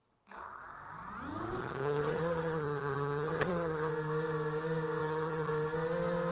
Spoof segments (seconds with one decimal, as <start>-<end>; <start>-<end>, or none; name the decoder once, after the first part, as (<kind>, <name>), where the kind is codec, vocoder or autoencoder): 1.6-3.9 (vocoder, HiFi-GAN); 5.0-5.5